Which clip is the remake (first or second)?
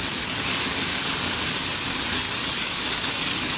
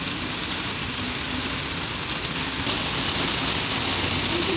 first